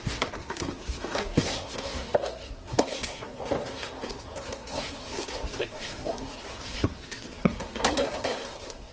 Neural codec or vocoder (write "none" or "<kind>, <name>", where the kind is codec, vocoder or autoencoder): codec, SNAC